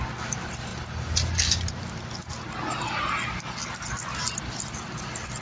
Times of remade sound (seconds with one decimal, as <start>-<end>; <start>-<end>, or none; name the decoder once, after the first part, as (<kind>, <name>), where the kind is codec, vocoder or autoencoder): none